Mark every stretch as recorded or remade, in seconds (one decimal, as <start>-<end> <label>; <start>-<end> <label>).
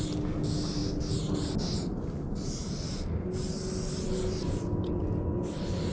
0.0-5.9 recorded